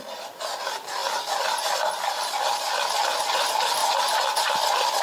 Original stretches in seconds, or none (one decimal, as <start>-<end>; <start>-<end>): 0.0-5.0